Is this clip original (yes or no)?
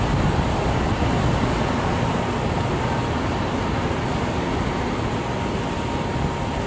yes